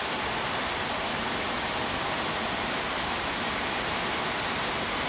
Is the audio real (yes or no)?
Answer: yes